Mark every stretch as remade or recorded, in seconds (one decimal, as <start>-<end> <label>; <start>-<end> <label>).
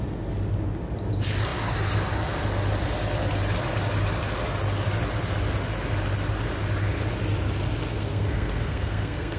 0.0-7.9 recorded; 7.9-9.4 remade